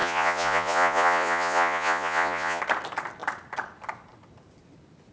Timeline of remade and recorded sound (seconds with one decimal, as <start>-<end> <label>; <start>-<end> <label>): 0.0-2.6 remade; 2.6-5.1 recorded